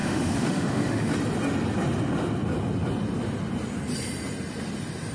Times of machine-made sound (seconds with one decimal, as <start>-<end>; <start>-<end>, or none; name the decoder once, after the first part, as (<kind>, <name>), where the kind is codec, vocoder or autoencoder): 0.0-1.1 (autoencoder, DAC-VAE)